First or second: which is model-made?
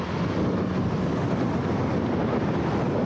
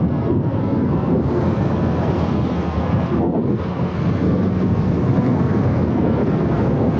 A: second